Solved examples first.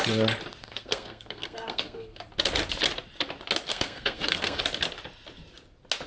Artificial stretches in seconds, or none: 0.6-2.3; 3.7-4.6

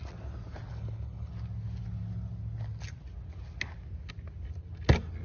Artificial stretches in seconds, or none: 0.7-1.3

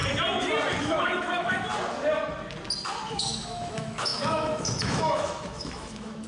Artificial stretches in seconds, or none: 0.8-1.7; 3.1-6.3

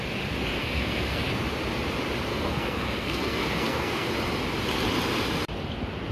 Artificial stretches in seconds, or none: 0.6-1.2; 2.3-4.1

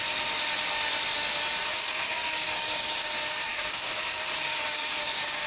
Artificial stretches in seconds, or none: 1.7-5.5

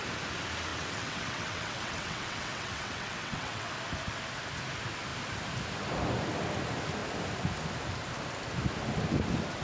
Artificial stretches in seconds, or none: 0.7-3.7

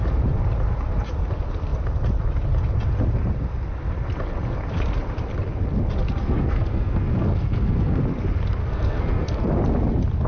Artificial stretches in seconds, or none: 6.2-8.0; 8.6-9.4